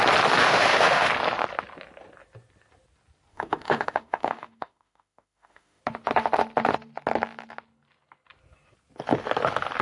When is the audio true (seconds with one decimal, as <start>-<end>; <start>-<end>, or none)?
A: 0.0-0.4; 1.1-3.3; 5.8-9.8